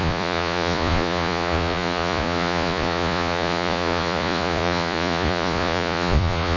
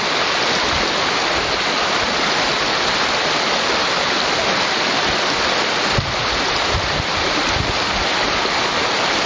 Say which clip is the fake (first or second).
first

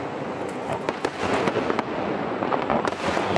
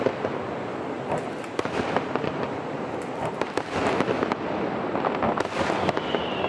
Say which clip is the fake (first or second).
first